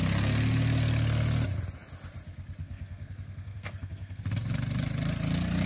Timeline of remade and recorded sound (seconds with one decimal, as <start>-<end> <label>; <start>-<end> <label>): 0.0-2.6 recorded; 2.6-4.2 remade; 4.2-5.7 recorded